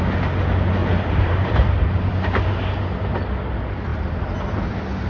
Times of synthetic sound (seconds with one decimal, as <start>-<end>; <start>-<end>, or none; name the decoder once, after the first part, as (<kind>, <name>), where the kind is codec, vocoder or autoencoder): 0.8-2.6 (vocoder, BigVGAN v2)